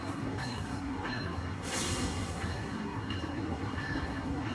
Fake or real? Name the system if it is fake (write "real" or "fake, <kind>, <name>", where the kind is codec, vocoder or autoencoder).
fake, codec, SNAC